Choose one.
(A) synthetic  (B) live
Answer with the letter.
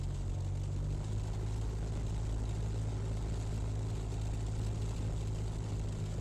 B